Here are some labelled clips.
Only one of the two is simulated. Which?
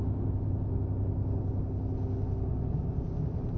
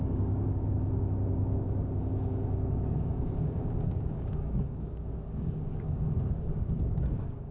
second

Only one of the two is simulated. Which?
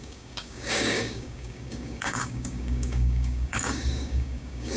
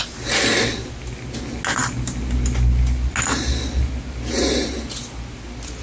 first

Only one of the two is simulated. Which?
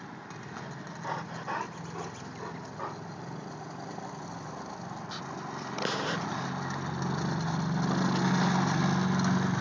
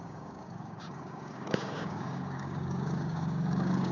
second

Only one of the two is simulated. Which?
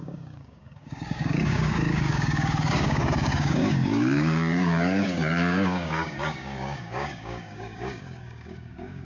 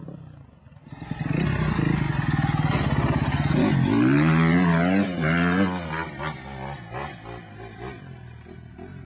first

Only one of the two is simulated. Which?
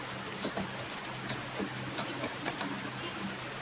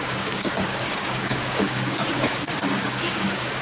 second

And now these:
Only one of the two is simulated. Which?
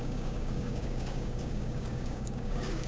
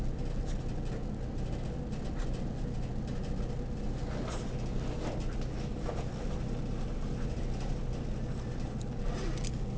first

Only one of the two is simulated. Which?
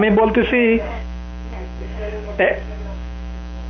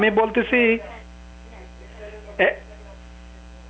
first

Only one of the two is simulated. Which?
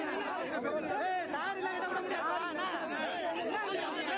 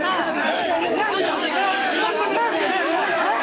second